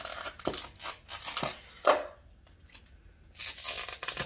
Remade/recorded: recorded